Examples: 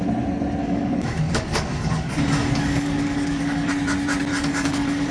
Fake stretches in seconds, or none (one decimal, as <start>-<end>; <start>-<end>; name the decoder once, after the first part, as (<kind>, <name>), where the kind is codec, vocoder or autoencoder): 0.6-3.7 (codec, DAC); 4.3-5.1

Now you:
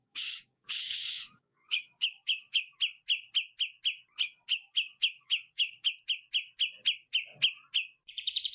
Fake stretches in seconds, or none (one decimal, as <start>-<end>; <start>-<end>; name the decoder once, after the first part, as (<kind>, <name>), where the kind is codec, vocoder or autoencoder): 0.0-2.8 (codec, DAC); 4.5-5.9

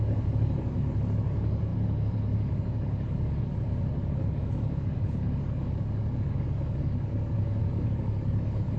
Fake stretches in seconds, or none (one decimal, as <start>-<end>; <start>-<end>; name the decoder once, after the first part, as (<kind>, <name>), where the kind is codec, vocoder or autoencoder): 0.0-8.8 (codec, DAC)